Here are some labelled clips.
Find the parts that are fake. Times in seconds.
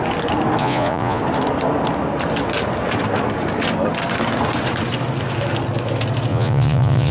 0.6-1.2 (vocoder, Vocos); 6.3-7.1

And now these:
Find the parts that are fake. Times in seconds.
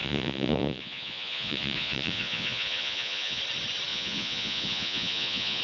0.0-3.4 (vocoder, Vocos); 3.9-5.6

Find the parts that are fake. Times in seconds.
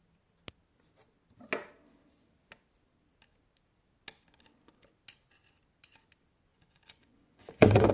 6.5-7.9 (vocoder, Vocos)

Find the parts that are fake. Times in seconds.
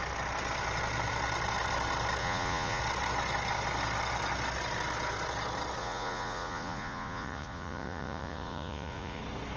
2.2-2.8 (vocoder, Vocos); 5.8-9.2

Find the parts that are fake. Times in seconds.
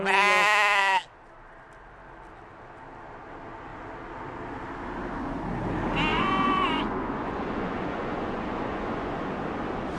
6.1-9.3 (vocoder, Vocos)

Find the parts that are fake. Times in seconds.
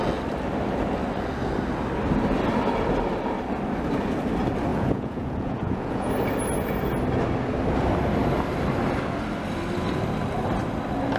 4.7-6.1 (vocoder, Vocos)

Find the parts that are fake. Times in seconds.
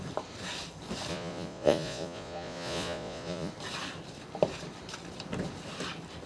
1.1-3.5 (vocoder, Vocos)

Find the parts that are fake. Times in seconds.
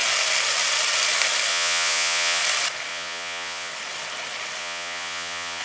1.5-2.4 (vocoder, Vocos); 2.9-3.7; 4.6-5.6